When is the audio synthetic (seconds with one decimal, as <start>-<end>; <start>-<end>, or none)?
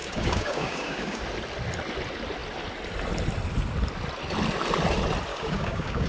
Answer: 0.0-1.2; 5.3-6.1